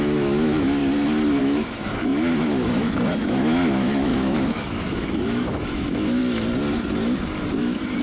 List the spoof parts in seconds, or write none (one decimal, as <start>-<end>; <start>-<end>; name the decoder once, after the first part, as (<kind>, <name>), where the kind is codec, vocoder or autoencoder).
0.0-0.8 (autoencoder, DAC-VAE); 1.4-6.2; 7.6-8.0